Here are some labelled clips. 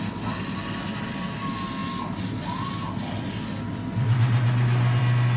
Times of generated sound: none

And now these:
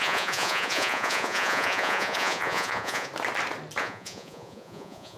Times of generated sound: 0.0-3.1 (vocoder, Vocos); 3.8-5.2

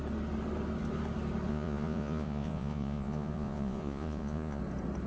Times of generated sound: 1.5-4.6 (vocoder, Vocos)

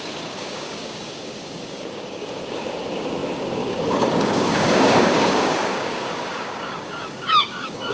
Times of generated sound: 0.0-7.9 (codec, DAC)

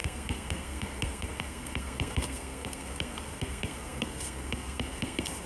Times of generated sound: 0.0-5.5 (codec, SNAC)

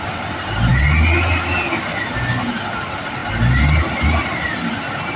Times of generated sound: none

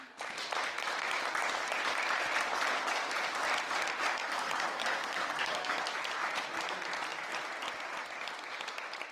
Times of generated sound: 4.2-5.8 (codec, DAC)